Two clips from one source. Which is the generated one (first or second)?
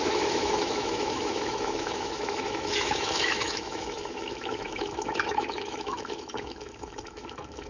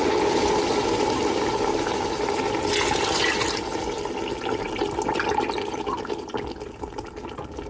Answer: first